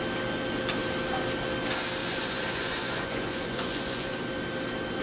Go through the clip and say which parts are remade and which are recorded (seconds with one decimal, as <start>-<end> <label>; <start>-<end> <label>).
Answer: 0.0-2.0 recorded; 2.0-4.1 remade; 4.1-5.0 recorded